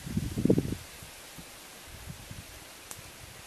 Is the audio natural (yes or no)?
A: yes